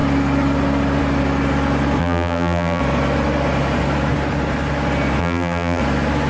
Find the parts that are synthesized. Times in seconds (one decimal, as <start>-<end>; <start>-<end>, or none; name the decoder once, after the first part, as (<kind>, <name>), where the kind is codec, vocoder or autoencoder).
2.0-2.8 (vocoder, BigVGAN v2); 5.2-5.8